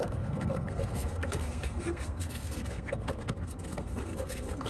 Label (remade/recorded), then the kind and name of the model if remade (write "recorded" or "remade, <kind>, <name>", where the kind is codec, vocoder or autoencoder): remade, codec, SNAC